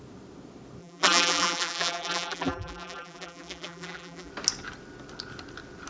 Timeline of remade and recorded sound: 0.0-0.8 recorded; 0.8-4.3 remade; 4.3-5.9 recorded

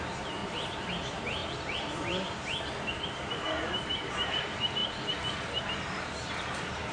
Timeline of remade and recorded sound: 0.0-0.4 remade; 0.4-0.9 recorded; 0.9-1.4 remade; 1.4-2.9 recorded; 2.9-4.8 remade; 4.8-5.6 recorded; 5.6-6.9 remade

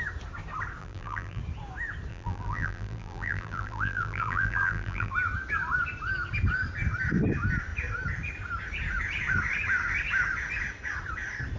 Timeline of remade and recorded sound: 0.0-0.8 recorded; 0.8-1.4 remade; 1.4-2.1 recorded; 2.1-5.1 remade; 5.1-11.6 recorded

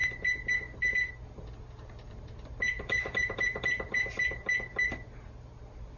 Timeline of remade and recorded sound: 0.0-6.0 remade